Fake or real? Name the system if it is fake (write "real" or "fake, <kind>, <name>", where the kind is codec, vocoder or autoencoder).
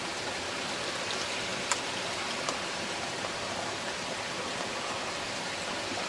fake, vocoder, BigVGAN v2